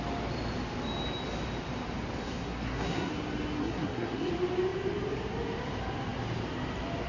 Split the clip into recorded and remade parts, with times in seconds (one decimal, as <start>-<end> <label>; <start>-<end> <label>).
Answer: 0.0-2.2 recorded; 2.2-3.1 remade; 3.1-3.6 recorded; 3.6-4.3 remade; 4.3-7.1 recorded